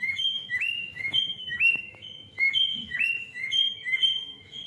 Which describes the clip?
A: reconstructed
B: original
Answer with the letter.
A